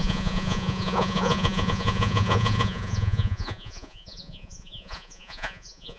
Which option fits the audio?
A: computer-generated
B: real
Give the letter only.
A